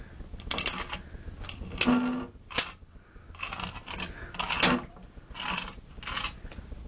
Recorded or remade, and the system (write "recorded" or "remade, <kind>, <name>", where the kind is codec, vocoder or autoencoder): recorded